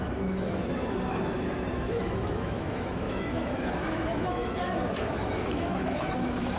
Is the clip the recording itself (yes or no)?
no